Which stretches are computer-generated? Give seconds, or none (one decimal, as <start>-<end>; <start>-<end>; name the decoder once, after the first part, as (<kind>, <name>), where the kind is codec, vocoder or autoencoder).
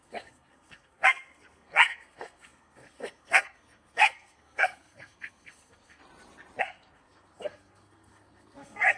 0.0-6.0 (codec, SNAC); 6.6-9.0